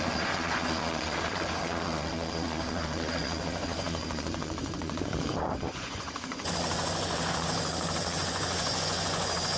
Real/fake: fake